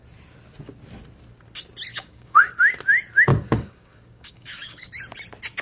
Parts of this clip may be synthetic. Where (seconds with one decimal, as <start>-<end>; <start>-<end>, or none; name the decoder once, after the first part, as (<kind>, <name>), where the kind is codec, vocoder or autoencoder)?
1.9-2.4 (codec, DAC); 3.3-4.9